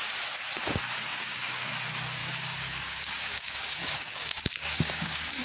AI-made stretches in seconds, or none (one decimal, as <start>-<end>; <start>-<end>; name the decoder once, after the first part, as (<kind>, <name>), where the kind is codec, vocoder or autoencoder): 1.1-1.7 (codec, DAC); 2.2-5.4